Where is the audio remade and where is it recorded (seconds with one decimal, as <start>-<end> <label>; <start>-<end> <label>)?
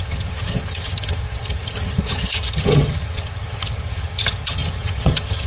0.0-5.5 remade